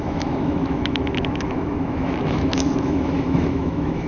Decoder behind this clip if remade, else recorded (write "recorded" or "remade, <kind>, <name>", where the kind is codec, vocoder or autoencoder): remade, autoencoder, DAC-VAE